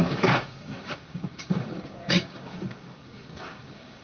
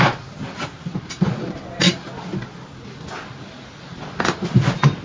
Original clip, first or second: second